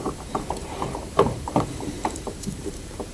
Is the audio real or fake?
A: fake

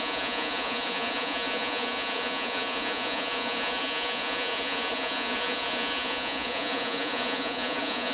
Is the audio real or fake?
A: fake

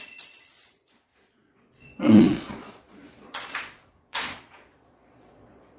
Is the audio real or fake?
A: fake